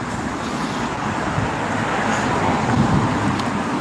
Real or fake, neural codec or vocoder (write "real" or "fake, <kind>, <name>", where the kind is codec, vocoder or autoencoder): real